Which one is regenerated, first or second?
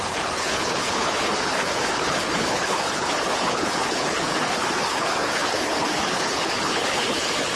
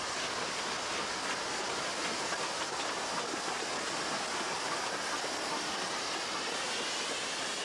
first